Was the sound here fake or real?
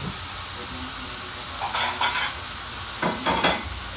real